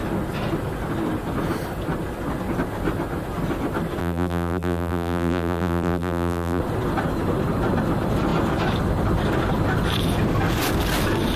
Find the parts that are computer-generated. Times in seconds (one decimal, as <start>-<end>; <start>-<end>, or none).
4.0-6.6